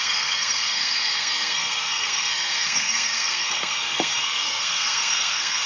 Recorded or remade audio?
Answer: remade